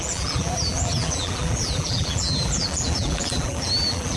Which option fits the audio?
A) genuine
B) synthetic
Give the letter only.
B